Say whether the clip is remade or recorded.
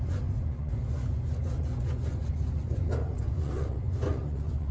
remade